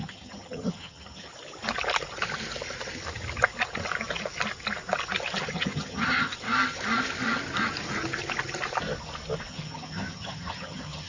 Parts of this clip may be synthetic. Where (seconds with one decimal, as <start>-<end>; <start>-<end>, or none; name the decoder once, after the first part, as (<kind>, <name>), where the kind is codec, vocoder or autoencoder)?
0.0-1.3 (vocoder, HiFi-GAN); 5.4-6.3; 9.5-11.1